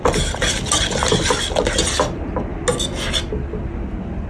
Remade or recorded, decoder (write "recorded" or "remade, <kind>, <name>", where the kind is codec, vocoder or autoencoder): recorded